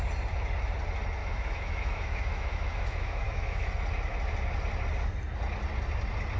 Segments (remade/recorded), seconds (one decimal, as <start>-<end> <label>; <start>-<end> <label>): 0.0-1.2 recorded; 1.2-3.7 remade; 3.7-6.4 recorded